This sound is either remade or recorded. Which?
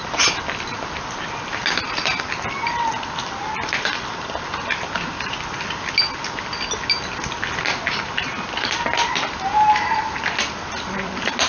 recorded